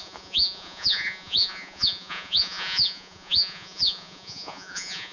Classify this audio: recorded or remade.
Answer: remade